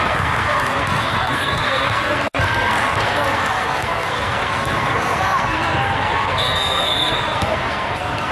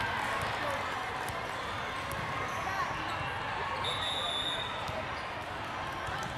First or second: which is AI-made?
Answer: first